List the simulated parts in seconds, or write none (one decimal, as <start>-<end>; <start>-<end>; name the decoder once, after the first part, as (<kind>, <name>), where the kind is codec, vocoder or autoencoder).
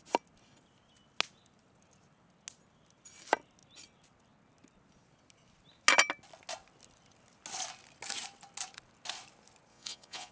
9.7-10.3 (vocoder, Vocos)